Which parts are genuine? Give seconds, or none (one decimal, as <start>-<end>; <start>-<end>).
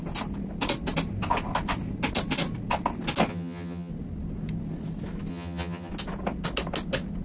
0.0-3.3; 3.9-5.3; 5.9-7.2